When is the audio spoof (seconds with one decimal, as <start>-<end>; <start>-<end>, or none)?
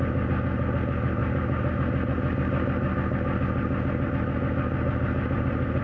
none